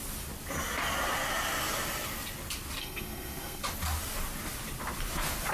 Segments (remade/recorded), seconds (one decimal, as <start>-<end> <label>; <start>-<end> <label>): 0.0-2.8 recorded; 2.8-3.6 remade; 3.6-5.5 recorded